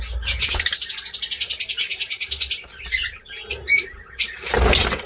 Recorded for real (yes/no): yes